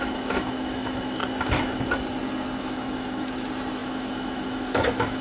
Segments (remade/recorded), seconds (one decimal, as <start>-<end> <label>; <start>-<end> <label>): 0.0-1.2 remade; 1.2-2.6 recorded; 2.6-5.2 remade